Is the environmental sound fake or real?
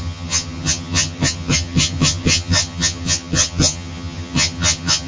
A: fake